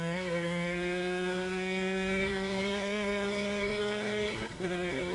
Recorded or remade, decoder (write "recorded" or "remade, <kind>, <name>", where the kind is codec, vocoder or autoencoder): remade, codec, SNAC